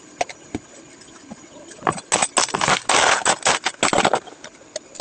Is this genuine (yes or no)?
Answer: yes